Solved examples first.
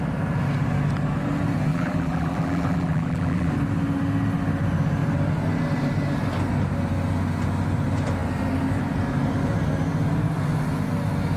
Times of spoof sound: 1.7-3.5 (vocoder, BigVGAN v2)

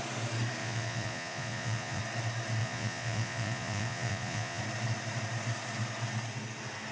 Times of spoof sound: 0.6-2.0 (vocoder, Vocos); 2.6-4.6

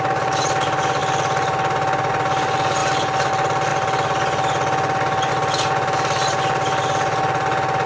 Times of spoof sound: none

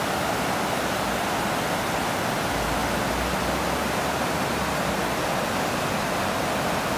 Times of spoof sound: none